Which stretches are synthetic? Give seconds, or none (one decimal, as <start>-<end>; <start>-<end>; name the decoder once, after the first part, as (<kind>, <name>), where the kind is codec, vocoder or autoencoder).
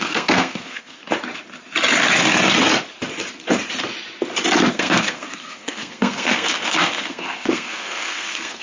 0.0-1.0 (codec, SNAC); 4.7-8.6